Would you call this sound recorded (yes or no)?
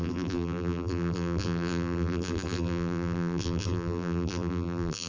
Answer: no